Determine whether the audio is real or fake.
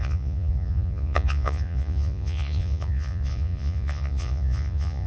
fake